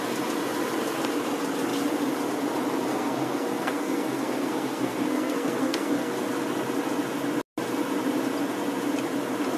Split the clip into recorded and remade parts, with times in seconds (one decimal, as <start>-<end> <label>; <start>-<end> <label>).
0.0-2.9 recorded; 2.9-6.1 remade; 6.1-9.6 recorded